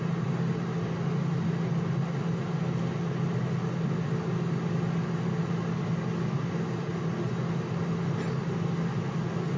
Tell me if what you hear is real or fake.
real